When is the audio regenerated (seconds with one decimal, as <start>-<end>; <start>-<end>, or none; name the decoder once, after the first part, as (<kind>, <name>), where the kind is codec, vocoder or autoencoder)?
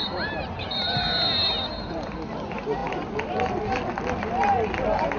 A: 0.0-1.5 (vocoder, BigVGAN v2)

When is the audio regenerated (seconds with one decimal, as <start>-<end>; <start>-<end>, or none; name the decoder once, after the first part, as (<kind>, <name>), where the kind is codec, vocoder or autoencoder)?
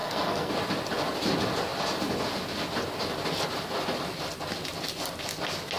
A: 0.0-0.5 (codec, SNAC)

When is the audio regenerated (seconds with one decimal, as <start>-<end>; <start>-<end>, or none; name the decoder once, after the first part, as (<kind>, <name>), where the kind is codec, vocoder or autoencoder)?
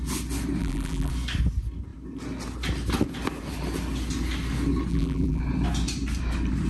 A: 0.6-1.1 (vocoder, BigVGAN v2); 4.9-5.4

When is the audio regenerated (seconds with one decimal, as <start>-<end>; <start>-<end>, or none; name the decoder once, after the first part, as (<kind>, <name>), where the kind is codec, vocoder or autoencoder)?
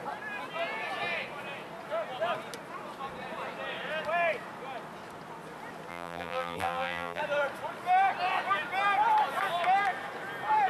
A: 5.9-7.2 (vocoder, BigVGAN v2)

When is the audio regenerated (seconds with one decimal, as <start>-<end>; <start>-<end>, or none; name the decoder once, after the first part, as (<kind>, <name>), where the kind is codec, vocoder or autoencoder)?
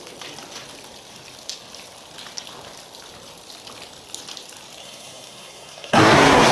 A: 4.8-6.5 (codec, SNAC)